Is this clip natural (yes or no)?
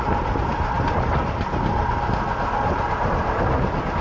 yes